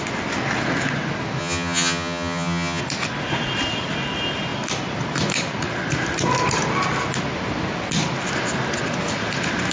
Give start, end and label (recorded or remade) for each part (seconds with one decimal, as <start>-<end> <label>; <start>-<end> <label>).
0.0-1.4 recorded; 1.4-2.8 remade; 2.8-9.7 recorded